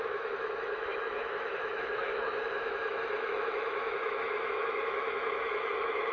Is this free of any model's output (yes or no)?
no